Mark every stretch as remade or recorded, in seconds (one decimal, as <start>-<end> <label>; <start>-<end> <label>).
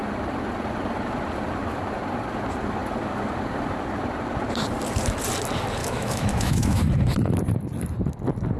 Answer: 0.0-5.8 recorded; 5.8-6.8 remade; 6.8-8.6 recorded